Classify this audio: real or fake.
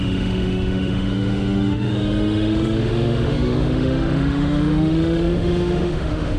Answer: fake